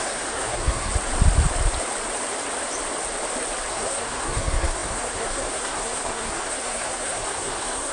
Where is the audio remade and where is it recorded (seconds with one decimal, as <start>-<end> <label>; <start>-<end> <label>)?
0.0-0.9 remade; 0.9-3.7 recorded; 3.7-7.9 remade

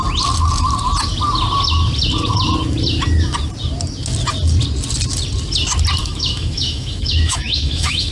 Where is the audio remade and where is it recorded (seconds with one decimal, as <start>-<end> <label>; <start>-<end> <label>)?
0.0-6.0 recorded; 6.0-8.1 remade

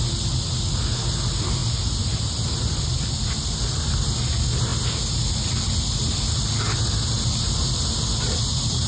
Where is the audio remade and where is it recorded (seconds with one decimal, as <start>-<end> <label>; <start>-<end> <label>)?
0.0-1.6 recorded; 1.6-2.2 remade; 2.2-8.9 recorded

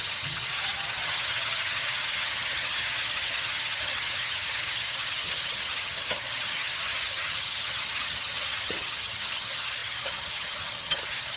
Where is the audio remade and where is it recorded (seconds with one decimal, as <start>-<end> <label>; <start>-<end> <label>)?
0.0-11.4 remade